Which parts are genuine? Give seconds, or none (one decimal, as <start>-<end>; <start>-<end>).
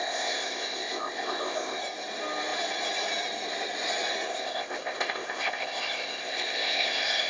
1.8-4.3